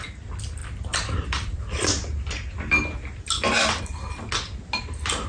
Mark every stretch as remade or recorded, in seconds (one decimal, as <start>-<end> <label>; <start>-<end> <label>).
0.0-5.3 recorded